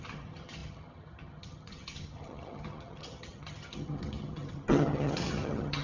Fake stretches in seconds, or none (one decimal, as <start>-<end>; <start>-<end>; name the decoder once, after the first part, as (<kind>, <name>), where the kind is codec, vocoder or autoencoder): 0.0-5.8 (vocoder, HiFi-GAN)